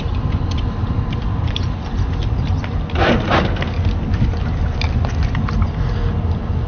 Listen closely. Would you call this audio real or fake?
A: real